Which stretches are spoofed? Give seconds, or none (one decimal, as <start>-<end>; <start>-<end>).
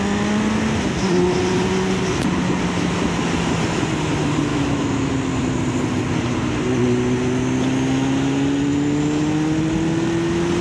4.5-5.1